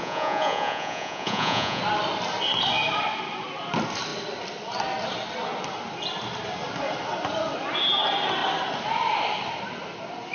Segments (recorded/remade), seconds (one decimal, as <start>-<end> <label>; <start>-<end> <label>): 0.0-1.8 remade; 1.8-10.3 recorded